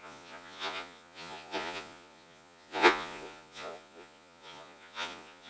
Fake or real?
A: fake